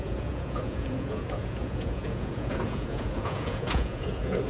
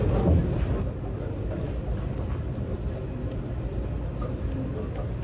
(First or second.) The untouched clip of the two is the second